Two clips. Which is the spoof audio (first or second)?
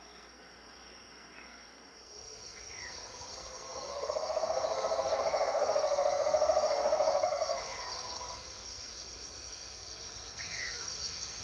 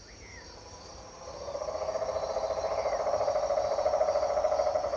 first